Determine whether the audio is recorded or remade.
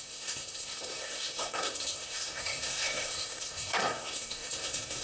remade